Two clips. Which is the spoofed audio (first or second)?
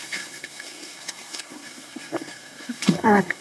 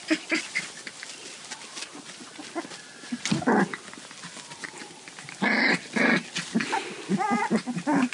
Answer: first